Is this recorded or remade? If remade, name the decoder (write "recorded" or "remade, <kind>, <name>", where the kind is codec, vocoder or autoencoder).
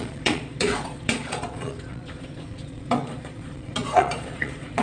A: remade, vocoder, Vocos